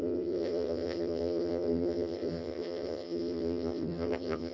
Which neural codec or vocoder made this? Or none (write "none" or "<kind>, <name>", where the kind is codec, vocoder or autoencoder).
vocoder, HiFi-GAN